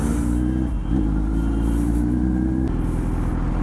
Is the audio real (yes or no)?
yes